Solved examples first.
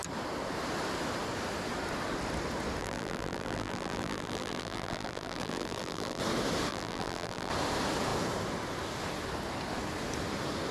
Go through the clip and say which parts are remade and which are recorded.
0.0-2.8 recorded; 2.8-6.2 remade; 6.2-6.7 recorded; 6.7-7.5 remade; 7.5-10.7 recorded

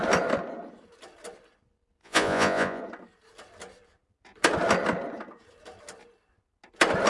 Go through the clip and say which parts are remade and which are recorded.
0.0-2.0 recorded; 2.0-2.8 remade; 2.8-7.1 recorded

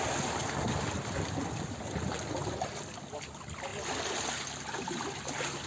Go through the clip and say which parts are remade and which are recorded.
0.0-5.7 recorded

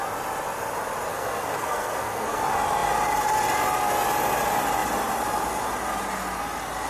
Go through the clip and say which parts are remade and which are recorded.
0.0-1.1 recorded; 1.1-2.4 remade; 2.4-6.9 recorded

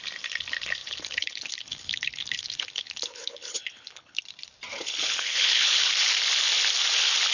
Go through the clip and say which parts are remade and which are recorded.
0.0-0.8 recorded; 0.8-4.2 remade; 4.2-4.7 recorded; 4.7-5.9 remade; 5.9-7.3 recorded

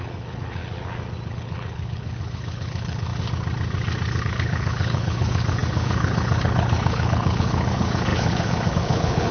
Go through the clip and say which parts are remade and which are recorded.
0.0-0.6 remade; 0.6-1.3 recorded; 1.3-3.1 remade; 3.1-4.2 recorded; 4.2-9.3 remade

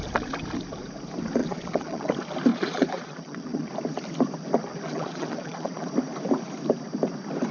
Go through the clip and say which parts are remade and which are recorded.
0.0-1.4 recorded; 1.4-2.1 remade; 2.1-2.5 recorded; 2.5-3.7 remade; 3.7-4.7 recorded; 4.7-5.9 remade; 5.9-7.5 recorded

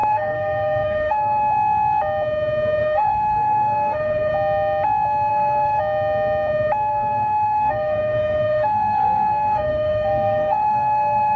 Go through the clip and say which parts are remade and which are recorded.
0.0-1.4 remade; 1.4-2.8 recorded; 2.8-4.3 remade; 4.3-5.3 recorded; 5.3-5.8 remade; 5.8-6.9 recorded; 6.9-11.4 remade